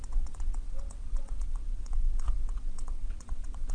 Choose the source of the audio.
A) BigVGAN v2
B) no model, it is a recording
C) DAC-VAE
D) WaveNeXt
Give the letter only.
D